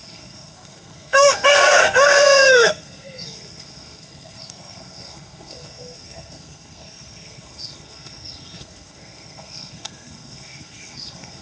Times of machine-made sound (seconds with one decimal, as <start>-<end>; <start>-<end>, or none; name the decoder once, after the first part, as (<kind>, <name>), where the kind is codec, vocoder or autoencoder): 0.0-11.4 (codec, SNAC)